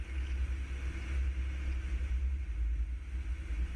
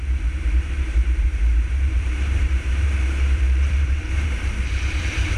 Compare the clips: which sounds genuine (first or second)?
first